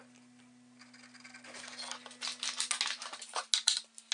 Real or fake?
real